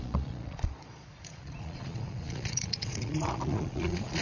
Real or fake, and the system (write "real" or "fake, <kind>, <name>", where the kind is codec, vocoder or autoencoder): fake, vocoder, Vocos